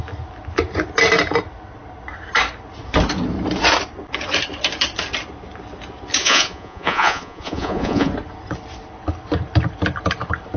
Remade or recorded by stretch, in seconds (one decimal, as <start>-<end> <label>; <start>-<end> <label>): 0.0-6.2 recorded; 6.2-8.1 remade; 8.1-10.6 recorded